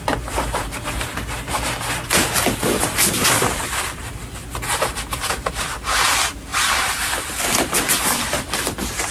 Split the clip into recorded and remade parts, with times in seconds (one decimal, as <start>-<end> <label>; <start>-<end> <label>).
0.0-1.1 remade; 1.1-2.8 recorded; 2.8-9.1 remade